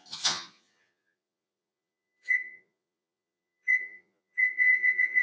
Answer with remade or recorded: remade